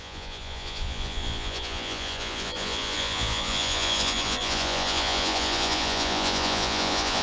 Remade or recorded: remade